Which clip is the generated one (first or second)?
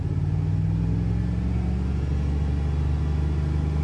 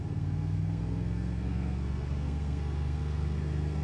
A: second